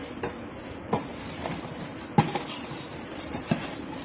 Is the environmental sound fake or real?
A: fake